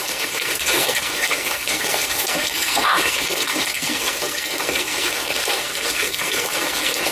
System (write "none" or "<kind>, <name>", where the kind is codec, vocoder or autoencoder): codec, SNAC